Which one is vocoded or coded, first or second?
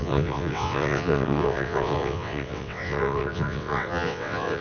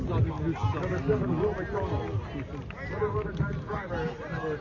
first